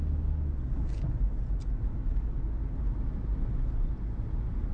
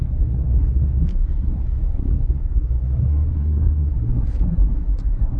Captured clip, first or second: first